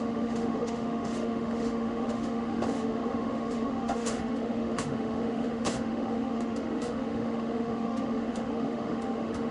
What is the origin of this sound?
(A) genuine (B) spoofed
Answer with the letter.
B